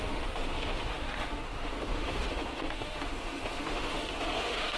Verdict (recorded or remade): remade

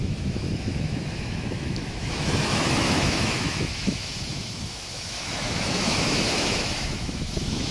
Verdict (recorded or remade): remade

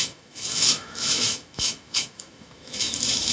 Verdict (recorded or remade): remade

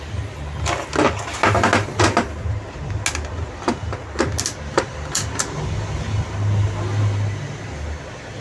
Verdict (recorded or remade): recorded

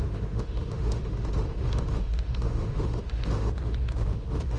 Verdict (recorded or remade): remade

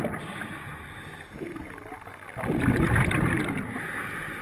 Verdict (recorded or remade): recorded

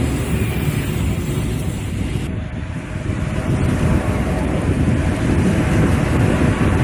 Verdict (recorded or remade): recorded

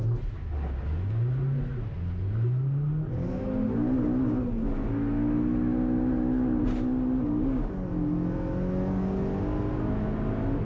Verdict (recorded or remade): recorded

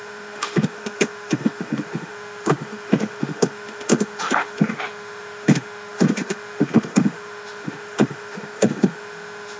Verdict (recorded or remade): remade